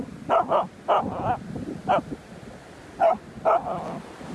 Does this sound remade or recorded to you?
recorded